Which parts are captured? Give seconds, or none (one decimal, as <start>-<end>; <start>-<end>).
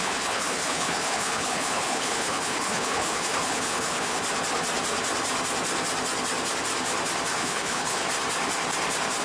4.2-7.3; 8.0-9.2